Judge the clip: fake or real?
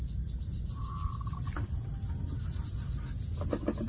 real